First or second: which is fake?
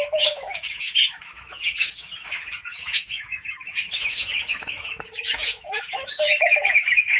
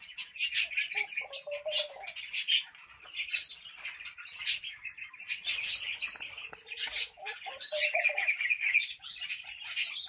first